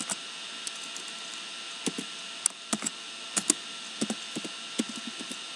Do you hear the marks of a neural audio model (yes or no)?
no